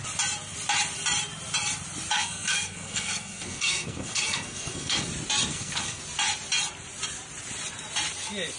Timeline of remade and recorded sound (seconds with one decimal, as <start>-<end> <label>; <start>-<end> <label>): 0.0-2.1 recorded; 2.1-5.1 remade; 5.1-5.5 recorded; 5.5-6.0 remade; 6.0-8.6 recorded